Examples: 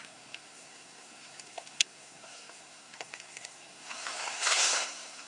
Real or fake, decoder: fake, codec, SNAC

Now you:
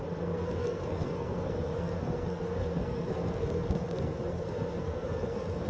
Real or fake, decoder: fake, codec, SNAC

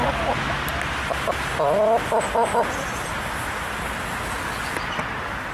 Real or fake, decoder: real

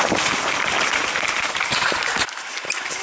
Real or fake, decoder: real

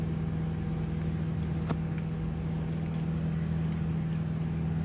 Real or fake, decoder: real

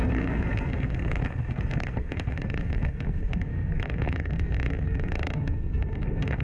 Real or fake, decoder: fake, codec, SNAC